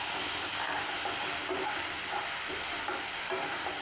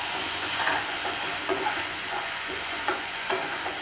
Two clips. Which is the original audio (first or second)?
first